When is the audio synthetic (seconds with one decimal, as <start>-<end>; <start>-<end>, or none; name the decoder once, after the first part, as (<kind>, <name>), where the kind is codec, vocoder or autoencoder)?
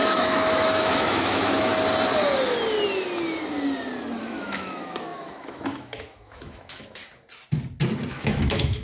0.0-1.7 (autoencoder, DAC-VAE); 4.2-7.0; 8.1-8.8